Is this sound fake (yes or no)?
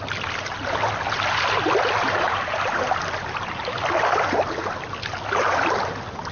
no